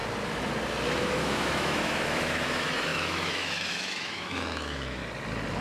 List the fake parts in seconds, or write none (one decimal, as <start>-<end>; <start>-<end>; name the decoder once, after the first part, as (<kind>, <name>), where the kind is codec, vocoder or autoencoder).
1.0-5.0 (autoencoder, DAC-VAE)